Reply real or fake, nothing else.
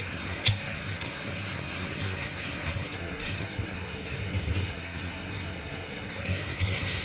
fake